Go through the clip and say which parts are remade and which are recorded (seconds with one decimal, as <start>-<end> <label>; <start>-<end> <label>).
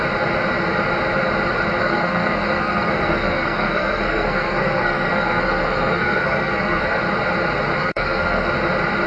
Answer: 0.0-1.8 recorded; 1.8-7.0 remade; 7.0-7.8 recorded; 7.8-8.5 remade; 8.5-9.1 recorded